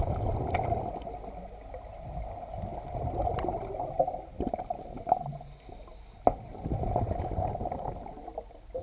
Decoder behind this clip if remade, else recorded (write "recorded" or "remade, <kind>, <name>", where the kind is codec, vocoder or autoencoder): recorded